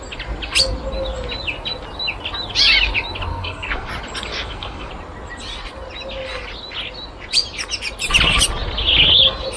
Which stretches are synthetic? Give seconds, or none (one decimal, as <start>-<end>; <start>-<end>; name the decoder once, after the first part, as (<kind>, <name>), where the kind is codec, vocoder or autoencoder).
3.3-3.9 (codec, SNAC); 4.3-4.9